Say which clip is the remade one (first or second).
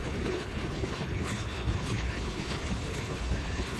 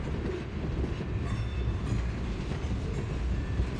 first